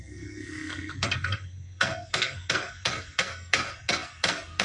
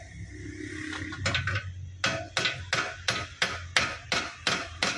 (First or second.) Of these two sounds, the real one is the second